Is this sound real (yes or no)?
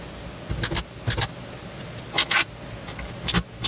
yes